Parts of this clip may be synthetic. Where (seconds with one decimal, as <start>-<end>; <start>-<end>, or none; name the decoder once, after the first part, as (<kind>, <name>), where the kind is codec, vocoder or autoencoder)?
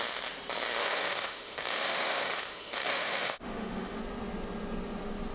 0.8-4.0 (autoencoder, DAC-VAE)